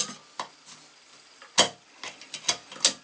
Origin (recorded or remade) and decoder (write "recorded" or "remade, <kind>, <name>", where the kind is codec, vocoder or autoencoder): recorded